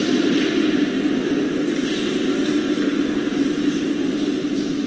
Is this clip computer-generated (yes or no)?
no